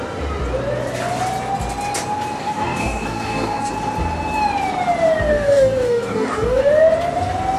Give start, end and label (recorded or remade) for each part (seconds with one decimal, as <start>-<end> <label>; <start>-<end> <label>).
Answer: 0.0-2.4 recorded; 2.4-3.7 remade; 3.7-5.3 recorded; 5.3-6.7 remade; 6.7-7.6 recorded